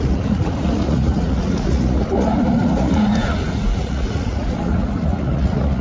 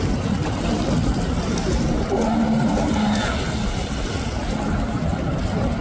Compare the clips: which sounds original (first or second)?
second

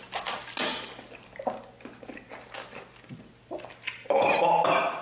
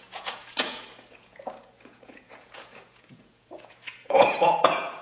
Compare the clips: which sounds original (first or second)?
first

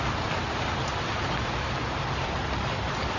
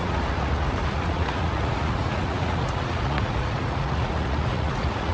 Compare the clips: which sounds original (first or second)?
first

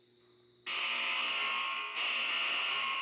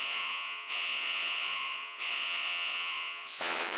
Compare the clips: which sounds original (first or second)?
first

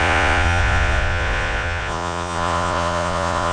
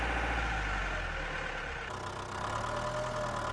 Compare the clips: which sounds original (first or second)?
second